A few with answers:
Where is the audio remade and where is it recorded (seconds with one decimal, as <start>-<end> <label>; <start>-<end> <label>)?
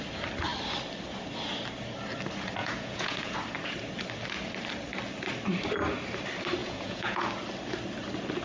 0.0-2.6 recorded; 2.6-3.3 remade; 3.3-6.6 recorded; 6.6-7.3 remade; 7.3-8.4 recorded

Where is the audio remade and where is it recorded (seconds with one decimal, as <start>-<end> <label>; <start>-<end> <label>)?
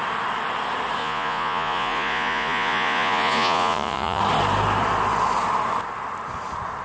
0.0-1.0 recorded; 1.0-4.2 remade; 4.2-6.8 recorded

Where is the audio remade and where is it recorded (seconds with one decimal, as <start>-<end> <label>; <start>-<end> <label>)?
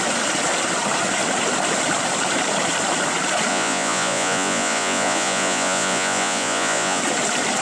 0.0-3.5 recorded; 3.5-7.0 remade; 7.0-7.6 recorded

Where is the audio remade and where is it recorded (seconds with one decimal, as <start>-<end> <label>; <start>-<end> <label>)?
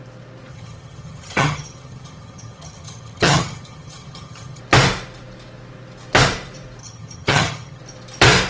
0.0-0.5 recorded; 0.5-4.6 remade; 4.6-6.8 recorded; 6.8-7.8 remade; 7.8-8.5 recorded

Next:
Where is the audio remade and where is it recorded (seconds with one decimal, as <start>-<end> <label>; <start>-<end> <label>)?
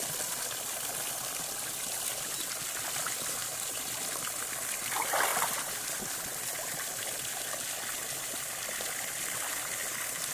0.0-3.4 recorded; 3.4-4.0 remade; 4.0-10.3 recorded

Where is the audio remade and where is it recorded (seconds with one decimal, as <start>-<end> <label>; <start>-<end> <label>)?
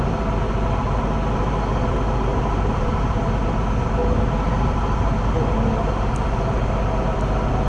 0.0-2.3 recorded; 2.3-2.9 remade; 2.9-7.7 recorded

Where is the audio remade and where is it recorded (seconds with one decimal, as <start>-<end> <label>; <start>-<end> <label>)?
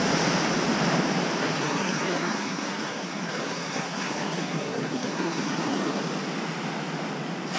0.0-1.4 recorded; 1.4-6.0 remade; 6.0-7.6 recorded